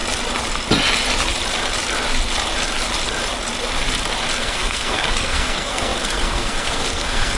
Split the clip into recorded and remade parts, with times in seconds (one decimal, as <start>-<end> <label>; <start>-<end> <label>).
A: 0.0-4.4 recorded; 4.4-7.4 remade